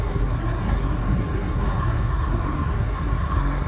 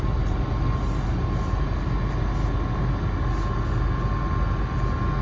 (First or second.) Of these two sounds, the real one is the second